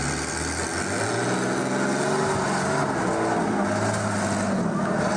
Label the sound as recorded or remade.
recorded